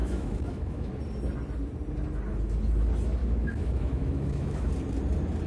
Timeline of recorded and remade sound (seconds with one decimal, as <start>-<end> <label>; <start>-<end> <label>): 0.0-0.9 remade; 0.9-3.2 recorded; 3.2-4.7 remade; 4.7-5.5 recorded